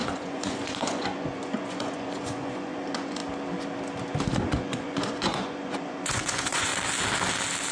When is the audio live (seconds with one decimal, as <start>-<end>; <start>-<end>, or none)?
3.2-4.5; 6.7-7.7